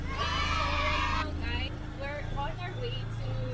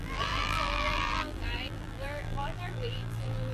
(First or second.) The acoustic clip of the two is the first